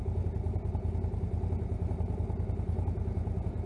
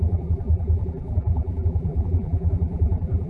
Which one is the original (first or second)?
first